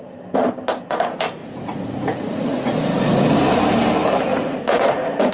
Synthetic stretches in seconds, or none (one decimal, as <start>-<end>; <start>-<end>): 1.4-3.6; 4.3-5.3